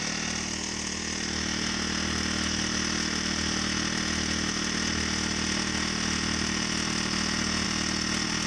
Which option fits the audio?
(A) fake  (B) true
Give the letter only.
B